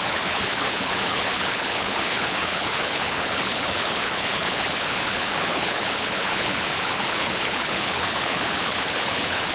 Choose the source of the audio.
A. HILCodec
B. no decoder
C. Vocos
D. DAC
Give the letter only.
A